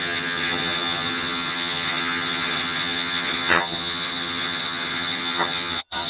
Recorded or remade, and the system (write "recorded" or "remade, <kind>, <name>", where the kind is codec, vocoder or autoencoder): remade, vocoder, HiFi-GAN